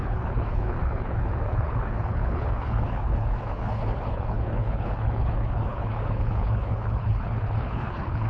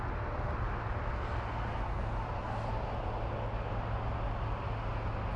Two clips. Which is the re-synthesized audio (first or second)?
first